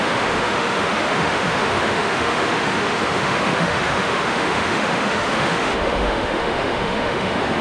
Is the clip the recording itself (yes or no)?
no